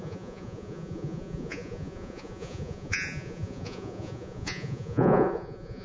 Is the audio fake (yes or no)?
yes